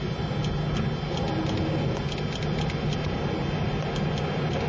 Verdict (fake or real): real